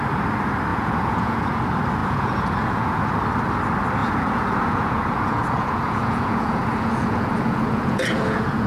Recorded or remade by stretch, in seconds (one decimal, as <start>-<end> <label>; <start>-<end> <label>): 0.0-0.7 recorded; 0.7-1.6 remade; 1.6-2.0 recorded; 2.0-3.1 remade; 3.1-4.0 recorded; 4.0-8.7 remade